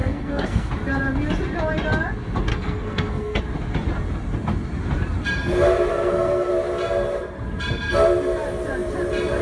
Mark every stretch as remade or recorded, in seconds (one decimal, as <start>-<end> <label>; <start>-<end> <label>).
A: 0.0-0.7 remade; 0.7-2.5 recorded; 2.5-3.4 remade; 3.4-5.9 recorded; 5.9-6.5 remade; 6.5-9.4 recorded